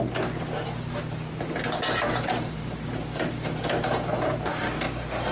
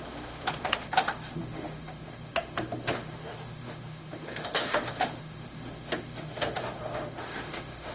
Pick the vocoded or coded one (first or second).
second